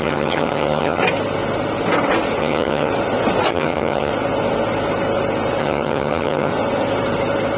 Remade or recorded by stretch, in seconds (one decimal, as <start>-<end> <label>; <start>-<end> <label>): 0.0-1.0 remade; 1.0-2.4 recorded; 2.4-2.9 remade; 2.9-3.5 recorded; 3.5-4.1 remade; 4.1-5.6 recorded; 5.6-6.5 remade; 6.5-7.6 recorded